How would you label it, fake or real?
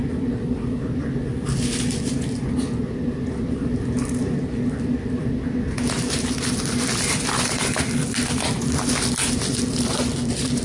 fake